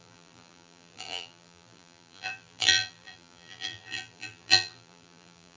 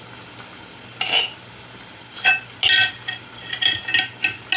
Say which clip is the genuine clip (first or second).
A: second